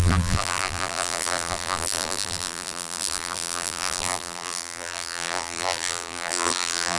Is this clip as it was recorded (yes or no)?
no